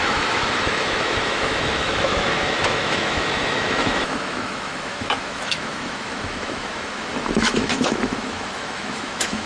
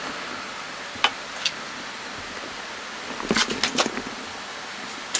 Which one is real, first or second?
second